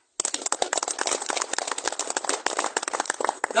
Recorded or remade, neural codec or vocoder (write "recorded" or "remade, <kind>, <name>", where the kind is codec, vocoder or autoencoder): recorded